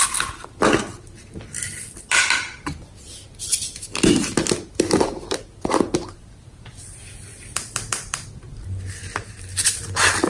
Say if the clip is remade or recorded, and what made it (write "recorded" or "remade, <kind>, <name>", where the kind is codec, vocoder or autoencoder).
recorded